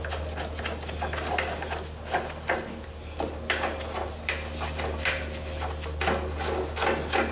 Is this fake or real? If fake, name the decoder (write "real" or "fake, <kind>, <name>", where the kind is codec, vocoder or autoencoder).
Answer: real